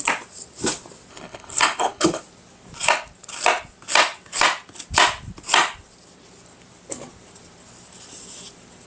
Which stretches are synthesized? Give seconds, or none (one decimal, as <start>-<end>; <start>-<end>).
1.1-2.2

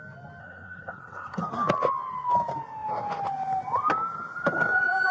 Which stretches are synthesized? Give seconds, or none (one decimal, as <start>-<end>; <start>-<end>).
0.4-1.4

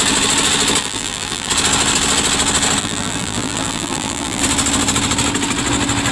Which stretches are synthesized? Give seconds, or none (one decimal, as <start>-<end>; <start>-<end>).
0.8-1.5; 2.8-4.4

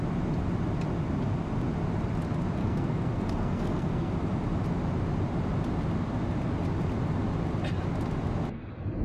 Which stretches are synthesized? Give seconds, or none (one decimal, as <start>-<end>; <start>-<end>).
2.6-4.1